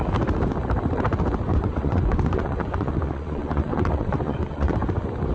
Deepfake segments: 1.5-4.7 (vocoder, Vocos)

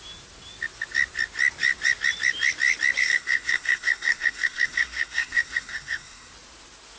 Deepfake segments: 3.0-6.3 (codec, SNAC)

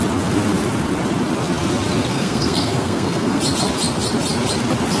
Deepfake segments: 2.1-3.4 (codec, SNAC)